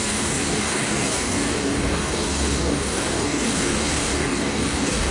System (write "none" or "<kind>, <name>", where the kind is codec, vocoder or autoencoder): codec, DAC